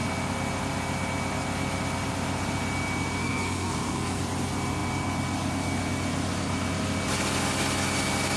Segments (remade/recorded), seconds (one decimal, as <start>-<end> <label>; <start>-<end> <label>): 0.0-3.2 recorded; 3.2-4.2 remade; 4.2-8.4 recorded